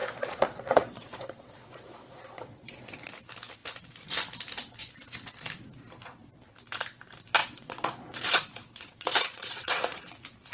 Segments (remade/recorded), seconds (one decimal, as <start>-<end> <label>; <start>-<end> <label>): 0.0-3.1 remade; 3.1-7.4 recorded; 7.4-10.0 remade; 10.0-10.5 recorded